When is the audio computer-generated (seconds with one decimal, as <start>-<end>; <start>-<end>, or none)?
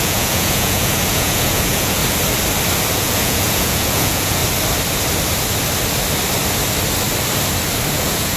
0.0-2.0; 2.9-4.4; 7.9-8.4